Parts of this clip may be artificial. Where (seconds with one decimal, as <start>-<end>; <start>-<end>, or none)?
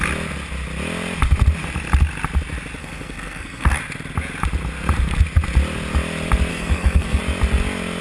2.8-3.8; 6.5-7.2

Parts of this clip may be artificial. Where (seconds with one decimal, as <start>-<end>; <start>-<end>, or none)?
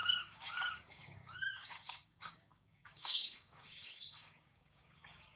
0.0-5.4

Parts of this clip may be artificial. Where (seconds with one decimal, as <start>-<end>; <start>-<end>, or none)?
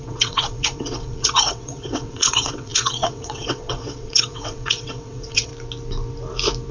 0.0-5.5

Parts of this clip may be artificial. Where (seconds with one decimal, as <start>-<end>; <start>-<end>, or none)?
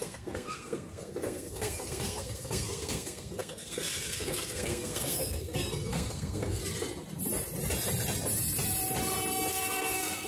0.0-6.6; 9.5-10.3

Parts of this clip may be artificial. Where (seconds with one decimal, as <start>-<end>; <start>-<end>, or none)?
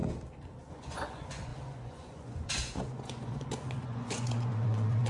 0.7-5.1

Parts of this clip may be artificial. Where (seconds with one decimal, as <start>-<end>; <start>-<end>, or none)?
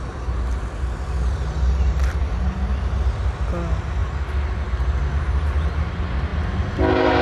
none